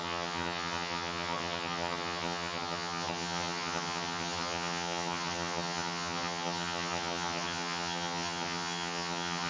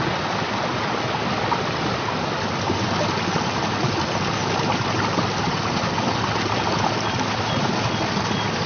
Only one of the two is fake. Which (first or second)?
first